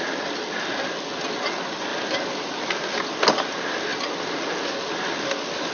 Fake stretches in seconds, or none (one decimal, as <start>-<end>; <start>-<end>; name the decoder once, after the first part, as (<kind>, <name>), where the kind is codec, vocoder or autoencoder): none